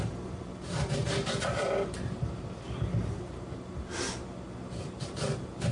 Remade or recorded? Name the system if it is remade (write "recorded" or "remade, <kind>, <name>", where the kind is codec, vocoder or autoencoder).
remade, vocoder, BigVGAN v2